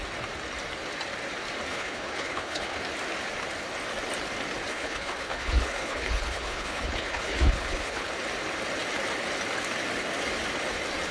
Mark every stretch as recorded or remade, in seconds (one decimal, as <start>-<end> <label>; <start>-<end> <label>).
0.0-1.7 recorded; 1.7-2.8 remade; 2.8-4.7 recorded; 4.7-8.1 remade; 8.1-11.1 recorded